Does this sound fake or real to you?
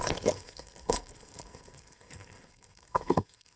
fake